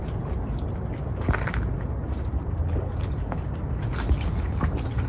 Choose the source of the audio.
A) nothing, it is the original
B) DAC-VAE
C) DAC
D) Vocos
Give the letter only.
A